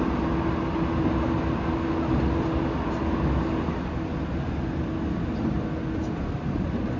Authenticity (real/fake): real